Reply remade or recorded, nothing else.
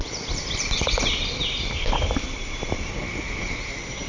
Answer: recorded